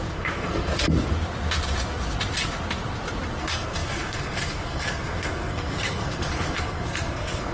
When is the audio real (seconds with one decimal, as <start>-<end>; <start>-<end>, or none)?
0.7-3.4